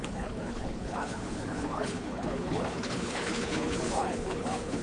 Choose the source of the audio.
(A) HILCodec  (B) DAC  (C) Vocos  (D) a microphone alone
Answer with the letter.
A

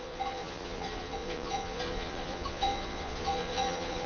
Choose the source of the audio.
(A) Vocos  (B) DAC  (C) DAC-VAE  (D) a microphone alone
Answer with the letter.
A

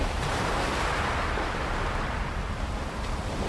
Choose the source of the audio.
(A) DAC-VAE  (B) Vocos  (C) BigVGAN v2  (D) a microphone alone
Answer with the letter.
C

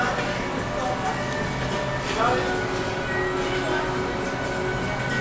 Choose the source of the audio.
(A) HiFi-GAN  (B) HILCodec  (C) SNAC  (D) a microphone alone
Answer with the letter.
D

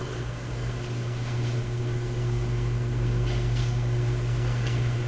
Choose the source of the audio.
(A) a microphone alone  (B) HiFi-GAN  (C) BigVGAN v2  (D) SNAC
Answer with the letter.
D